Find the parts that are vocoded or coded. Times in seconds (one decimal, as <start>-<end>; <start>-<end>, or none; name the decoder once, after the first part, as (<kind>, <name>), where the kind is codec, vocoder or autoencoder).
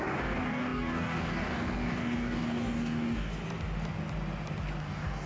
0.0-3.3 (codec, DAC); 4.8-5.3